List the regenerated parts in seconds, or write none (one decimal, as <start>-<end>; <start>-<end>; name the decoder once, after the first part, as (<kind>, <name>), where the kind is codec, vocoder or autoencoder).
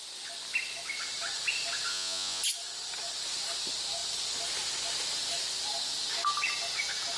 1.9-2.4 (vocoder, Vocos)